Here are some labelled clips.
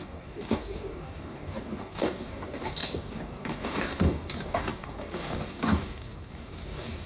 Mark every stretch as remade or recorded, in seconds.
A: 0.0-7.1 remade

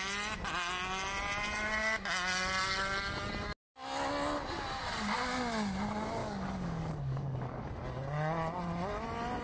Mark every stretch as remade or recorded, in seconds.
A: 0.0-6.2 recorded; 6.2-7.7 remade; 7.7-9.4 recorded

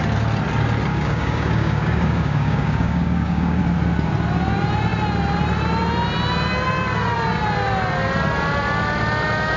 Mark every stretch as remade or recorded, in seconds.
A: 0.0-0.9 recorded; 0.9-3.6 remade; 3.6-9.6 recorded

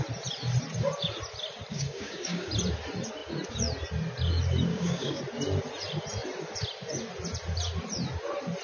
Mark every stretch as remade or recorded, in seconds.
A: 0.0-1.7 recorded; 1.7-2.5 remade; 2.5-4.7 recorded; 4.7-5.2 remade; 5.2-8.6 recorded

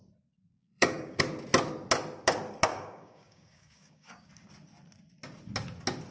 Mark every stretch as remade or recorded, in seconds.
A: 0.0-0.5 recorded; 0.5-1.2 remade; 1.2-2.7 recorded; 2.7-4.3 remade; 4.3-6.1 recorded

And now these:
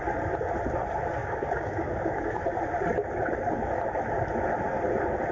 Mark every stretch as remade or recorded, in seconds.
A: 0.0-1.2 recorded; 1.2-2.4 remade; 2.4-5.3 recorded

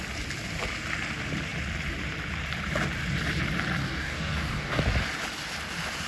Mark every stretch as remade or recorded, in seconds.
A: 0.0-3.8 recorded; 3.8-4.8 remade; 4.8-6.1 recorded

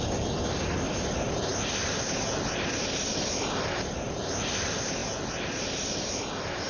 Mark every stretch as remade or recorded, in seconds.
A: 0.0-6.7 recorded